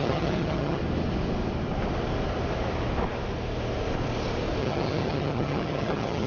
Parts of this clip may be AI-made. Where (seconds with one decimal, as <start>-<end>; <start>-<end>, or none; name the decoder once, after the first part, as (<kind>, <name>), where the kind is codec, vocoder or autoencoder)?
0.0-0.8 (vocoder, HiFi-GAN); 4.6-6.3